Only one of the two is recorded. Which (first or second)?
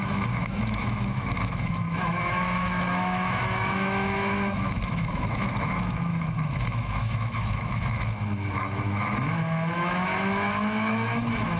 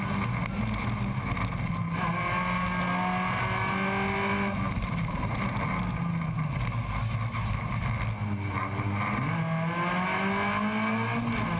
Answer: second